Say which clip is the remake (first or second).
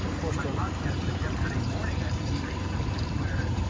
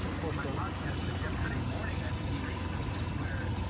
first